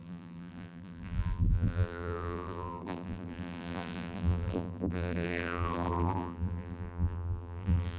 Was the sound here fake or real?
fake